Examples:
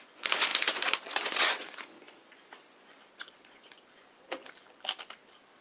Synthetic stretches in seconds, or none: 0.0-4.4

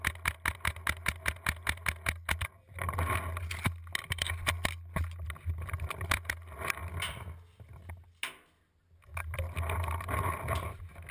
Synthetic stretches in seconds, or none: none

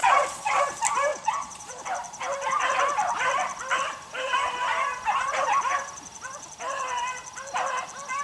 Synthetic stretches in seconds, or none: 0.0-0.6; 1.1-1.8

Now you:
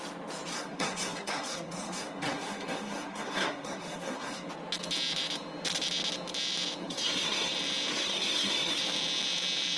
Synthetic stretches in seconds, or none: 0.5-4.5; 6.8-7.5; 7.9-8.8